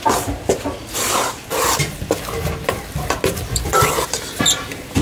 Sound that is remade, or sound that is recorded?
remade